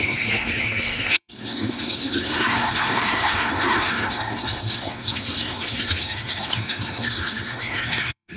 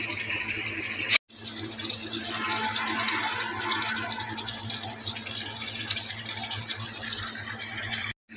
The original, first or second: second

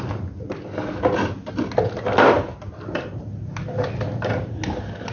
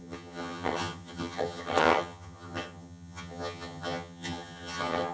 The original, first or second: first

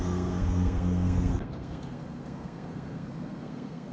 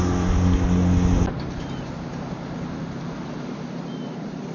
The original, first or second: second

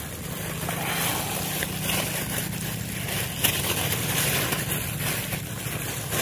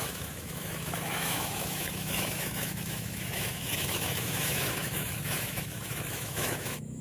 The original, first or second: first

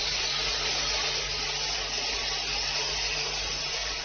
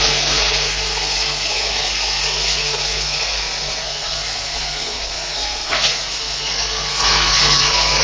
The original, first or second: first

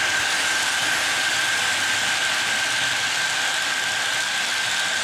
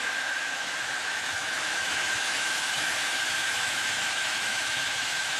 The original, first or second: first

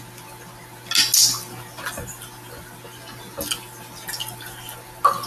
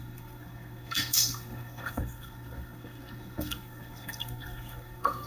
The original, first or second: first